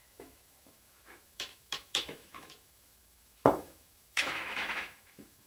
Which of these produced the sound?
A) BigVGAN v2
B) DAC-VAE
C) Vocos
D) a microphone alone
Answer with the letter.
B